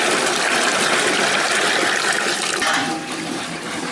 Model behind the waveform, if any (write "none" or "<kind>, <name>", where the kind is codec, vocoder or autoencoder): none